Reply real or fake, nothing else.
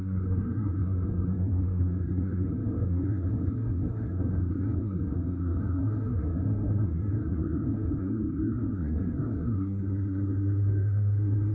fake